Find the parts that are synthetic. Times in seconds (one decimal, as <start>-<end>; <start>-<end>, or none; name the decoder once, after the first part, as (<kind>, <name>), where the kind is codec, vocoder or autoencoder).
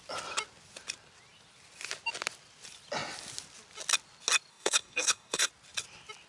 4.5-5.5 (codec, DAC)